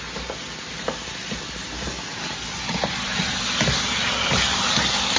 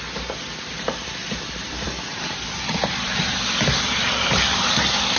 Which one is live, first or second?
first